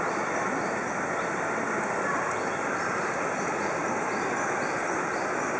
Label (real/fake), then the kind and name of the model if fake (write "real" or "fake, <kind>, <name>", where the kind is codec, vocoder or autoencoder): real